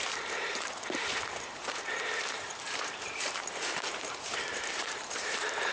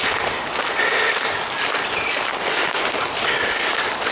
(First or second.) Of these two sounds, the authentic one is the second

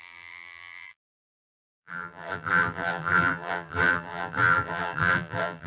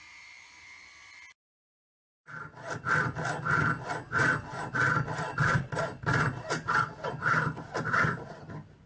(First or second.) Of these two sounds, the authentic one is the second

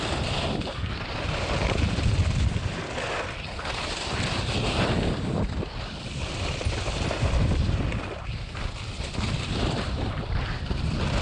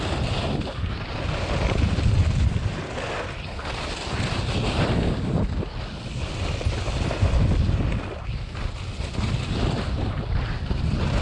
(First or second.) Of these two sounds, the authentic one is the second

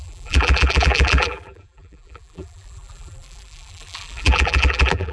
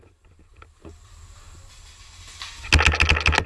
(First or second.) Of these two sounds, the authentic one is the second